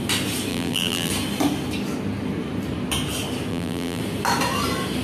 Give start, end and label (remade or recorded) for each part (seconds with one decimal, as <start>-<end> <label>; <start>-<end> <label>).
0.0-0.5 recorded; 0.5-1.1 remade; 1.1-3.5 recorded; 3.5-4.0 remade; 4.0-5.0 recorded